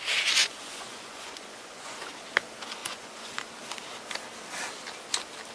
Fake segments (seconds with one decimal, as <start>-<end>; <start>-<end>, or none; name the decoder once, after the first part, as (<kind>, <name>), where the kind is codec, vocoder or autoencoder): 0.4-2.0 (vocoder, Vocos); 2.8-3.5